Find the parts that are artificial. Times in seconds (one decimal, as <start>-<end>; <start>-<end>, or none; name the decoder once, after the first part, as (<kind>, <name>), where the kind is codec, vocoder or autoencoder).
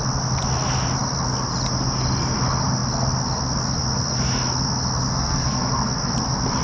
5.1-5.7 (codec, SNAC)